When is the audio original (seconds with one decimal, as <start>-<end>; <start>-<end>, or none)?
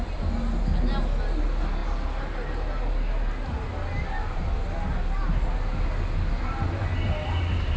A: 0.0-7.8